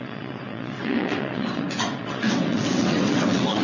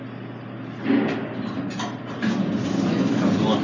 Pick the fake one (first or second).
first